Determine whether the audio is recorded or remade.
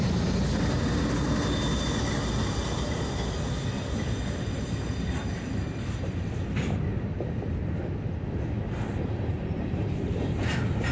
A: recorded